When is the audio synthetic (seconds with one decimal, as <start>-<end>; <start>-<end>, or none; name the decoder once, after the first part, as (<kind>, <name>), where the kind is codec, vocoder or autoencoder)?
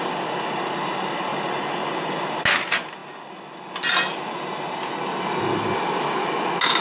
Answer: none